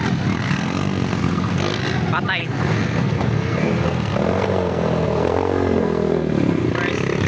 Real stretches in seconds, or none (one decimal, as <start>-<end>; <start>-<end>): 0.0-0.4; 1.8-2.4; 6.7-7.3